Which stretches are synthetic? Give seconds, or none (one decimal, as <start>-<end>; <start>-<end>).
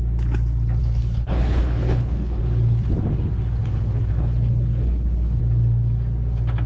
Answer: 0.8-2.4; 3.6-5.4